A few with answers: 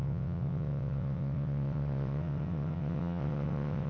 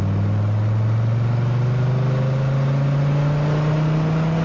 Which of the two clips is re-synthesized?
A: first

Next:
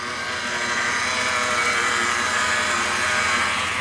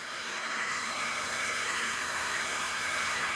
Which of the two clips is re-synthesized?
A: second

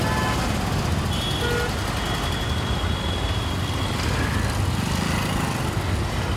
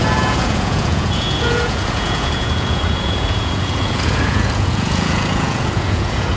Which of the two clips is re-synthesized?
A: second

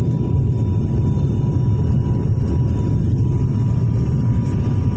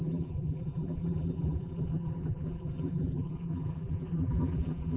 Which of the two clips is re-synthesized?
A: second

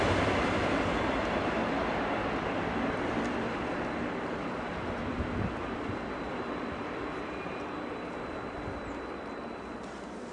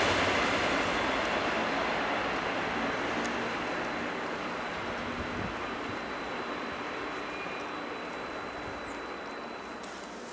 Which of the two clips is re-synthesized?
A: first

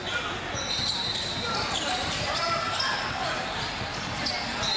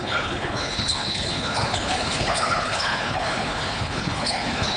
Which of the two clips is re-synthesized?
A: second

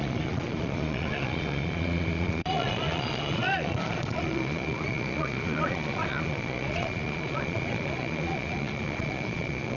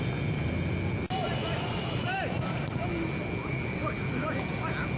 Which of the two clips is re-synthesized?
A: first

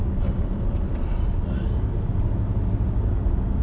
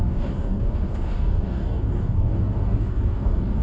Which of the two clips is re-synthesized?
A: second